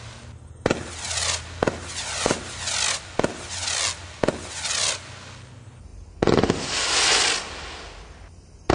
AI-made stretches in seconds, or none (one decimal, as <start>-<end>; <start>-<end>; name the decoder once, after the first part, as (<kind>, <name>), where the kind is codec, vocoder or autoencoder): none